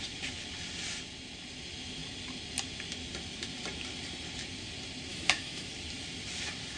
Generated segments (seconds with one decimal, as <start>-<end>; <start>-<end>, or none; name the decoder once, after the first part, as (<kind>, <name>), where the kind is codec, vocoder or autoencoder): 5.1-5.7 (autoencoder, DAC-VAE)